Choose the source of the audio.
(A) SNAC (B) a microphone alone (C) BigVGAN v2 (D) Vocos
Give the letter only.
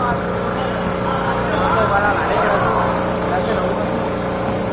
B